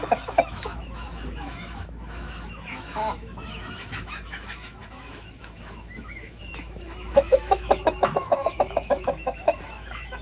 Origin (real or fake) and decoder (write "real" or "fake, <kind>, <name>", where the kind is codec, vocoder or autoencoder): fake, autoencoder, DAC-VAE